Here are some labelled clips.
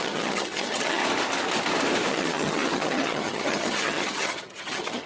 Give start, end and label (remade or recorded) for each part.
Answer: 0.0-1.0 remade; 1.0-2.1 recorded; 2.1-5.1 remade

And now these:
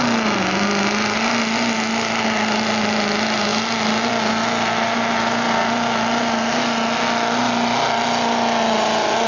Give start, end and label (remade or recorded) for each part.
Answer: 0.0-9.3 recorded

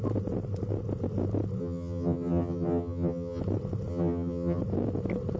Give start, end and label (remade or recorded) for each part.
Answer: 0.0-1.6 recorded; 1.6-3.4 remade; 3.4-3.9 recorded; 3.9-4.6 remade; 4.6-5.4 recorded

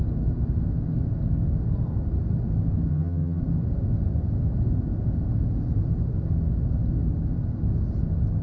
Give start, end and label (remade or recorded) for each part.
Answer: 0.0-2.9 recorded; 2.9-3.4 remade; 3.4-8.4 recorded

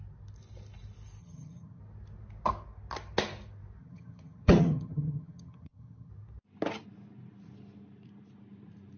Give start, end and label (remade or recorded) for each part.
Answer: 0.0-1.2 recorded; 1.2-1.8 remade; 1.8-3.8 recorded; 3.8-6.1 remade; 6.1-9.0 recorded

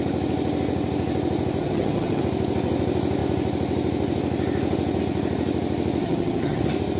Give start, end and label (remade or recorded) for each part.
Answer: 0.0-1.6 recorded; 1.6-2.2 remade; 2.2-6.0 recorded; 6.0-6.6 remade; 6.6-7.0 recorded

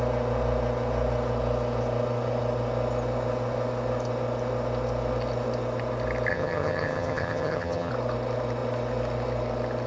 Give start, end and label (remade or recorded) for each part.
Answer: 0.0-6.3 recorded; 6.3-7.9 remade; 7.9-9.9 recorded